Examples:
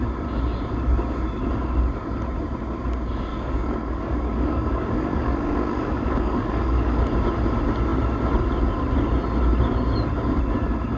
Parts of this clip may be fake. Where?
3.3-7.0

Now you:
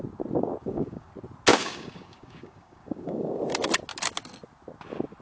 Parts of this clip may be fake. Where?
0.6-1.1; 1.5-3.4

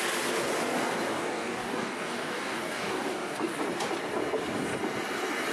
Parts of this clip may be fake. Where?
1.1-3.6